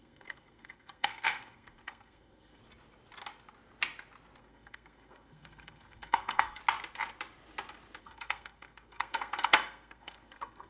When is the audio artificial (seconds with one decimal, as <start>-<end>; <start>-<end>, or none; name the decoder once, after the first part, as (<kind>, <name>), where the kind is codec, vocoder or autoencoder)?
0.0-2.6 (codec, SNAC); 4.4-6.6; 8.0-10.7